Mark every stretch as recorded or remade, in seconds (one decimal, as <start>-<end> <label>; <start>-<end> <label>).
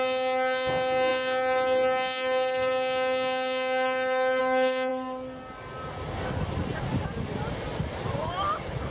0.0-8.9 recorded